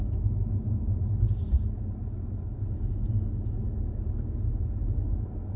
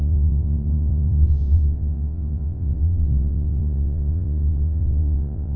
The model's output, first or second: second